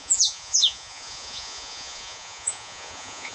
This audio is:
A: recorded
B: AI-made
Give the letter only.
B